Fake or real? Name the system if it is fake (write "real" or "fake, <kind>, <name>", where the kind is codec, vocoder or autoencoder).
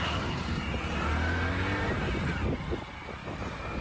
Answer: real